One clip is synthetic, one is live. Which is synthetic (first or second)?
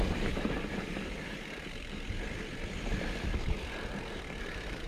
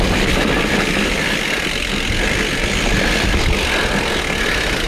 first